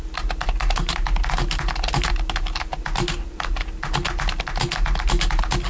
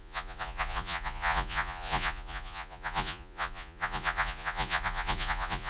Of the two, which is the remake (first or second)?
second